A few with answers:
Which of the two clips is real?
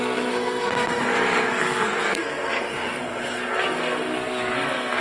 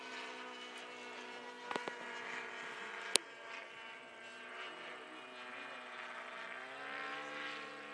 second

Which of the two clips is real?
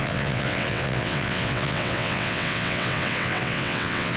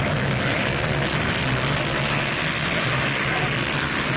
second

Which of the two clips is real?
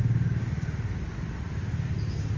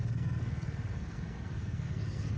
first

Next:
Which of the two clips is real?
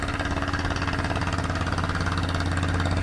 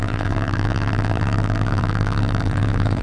first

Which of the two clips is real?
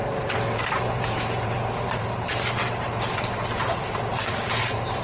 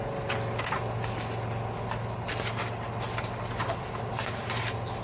second